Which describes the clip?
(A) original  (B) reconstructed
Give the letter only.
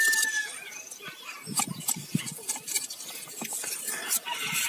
A